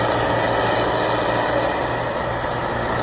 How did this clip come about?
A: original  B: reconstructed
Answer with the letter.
A